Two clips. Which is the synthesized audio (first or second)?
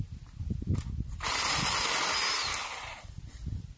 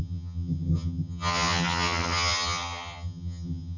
second